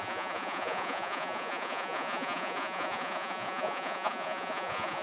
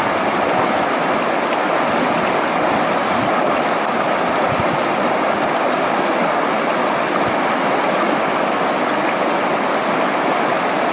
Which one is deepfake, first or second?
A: first